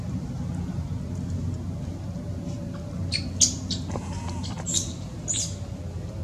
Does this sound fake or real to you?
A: real